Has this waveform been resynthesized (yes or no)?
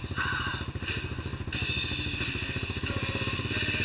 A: no